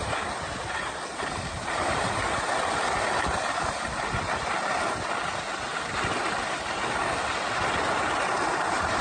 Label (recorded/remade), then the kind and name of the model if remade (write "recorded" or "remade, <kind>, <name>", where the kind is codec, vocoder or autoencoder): recorded